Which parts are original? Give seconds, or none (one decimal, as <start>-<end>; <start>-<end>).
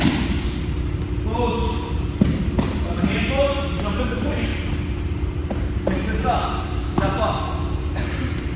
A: 0.0-8.6